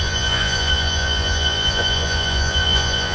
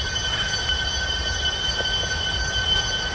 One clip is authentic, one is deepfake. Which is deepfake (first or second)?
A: first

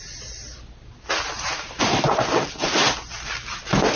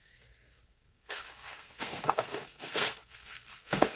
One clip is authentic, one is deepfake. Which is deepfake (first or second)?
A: second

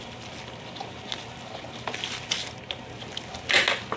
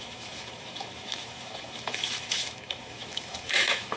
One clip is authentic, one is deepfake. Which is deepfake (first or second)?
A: second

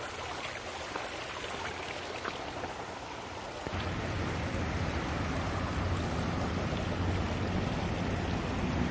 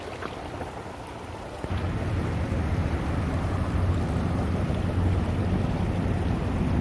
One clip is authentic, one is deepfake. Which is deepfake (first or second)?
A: second